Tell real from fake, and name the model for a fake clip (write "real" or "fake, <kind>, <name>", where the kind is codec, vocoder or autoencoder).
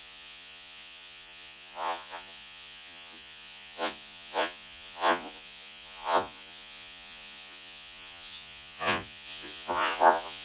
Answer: fake, vocoder, Vocos